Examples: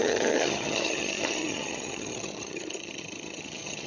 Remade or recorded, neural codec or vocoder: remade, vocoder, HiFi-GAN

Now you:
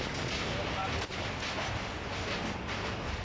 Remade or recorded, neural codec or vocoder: recorded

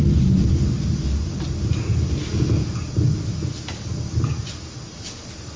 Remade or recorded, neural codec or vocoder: recorded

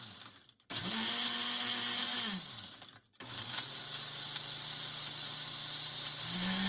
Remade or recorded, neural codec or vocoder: recorded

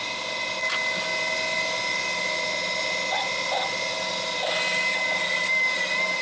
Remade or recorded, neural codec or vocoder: recorded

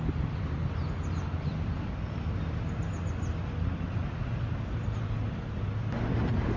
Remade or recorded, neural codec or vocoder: recorded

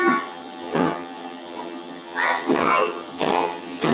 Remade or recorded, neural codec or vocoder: remade, vocoder, HiFi-GAN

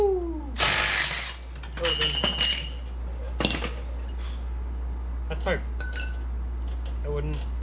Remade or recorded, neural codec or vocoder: recorded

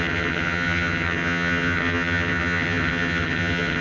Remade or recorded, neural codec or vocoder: remade, vocoder, HiFi-GAN